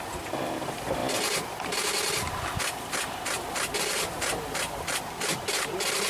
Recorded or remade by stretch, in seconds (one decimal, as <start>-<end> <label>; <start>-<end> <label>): 0.0-6.1 recorded